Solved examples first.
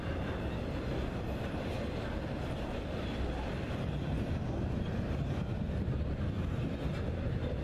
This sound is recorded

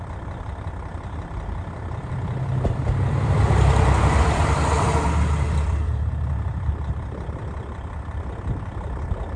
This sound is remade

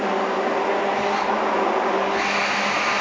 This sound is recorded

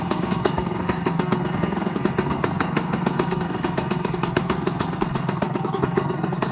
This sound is remade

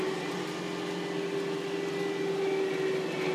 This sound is recorded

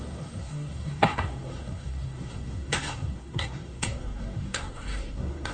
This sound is remade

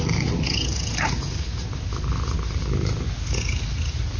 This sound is recorded